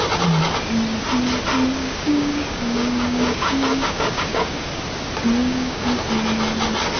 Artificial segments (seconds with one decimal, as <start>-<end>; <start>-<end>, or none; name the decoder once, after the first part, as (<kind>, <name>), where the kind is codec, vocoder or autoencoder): 1.8-4.8 (codec, DAC); 5.4-6.0